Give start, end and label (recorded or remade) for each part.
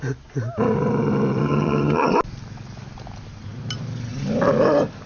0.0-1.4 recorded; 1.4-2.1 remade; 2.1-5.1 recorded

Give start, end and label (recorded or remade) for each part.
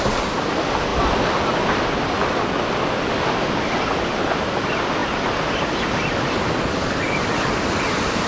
0.0-8.3 recorded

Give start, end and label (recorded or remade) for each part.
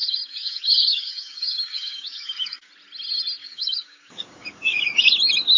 0.0-2.7 remade; 2.7-3.4 recorded; 3.4-5.1 remade; 5.1-5.6 recorded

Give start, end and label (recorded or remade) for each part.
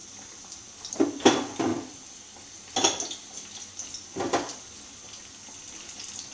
0.0-1.7 remade; 1.7-5.2 recorded; 5.2-6.3 remade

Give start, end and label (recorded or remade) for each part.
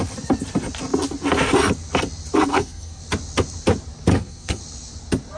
0.0-2.5 recorded; 2.5-3.0 remade; 3.0-4.1 recorded; 4.1-4.6 remade; 4.6-5.4 recorded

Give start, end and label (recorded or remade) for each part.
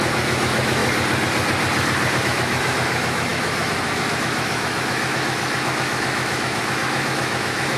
0.0-0.8 remade; 0.8-2.2 recorded; 2.2-7.8 remade